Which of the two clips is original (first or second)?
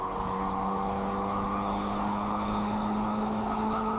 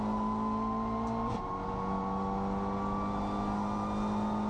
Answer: second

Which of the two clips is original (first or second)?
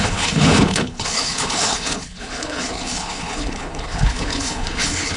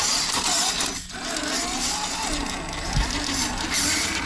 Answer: second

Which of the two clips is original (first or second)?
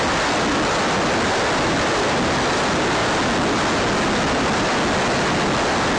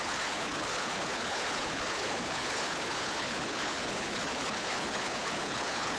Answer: first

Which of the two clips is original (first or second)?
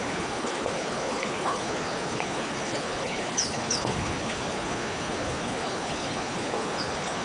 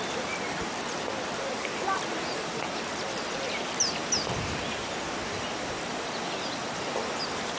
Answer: second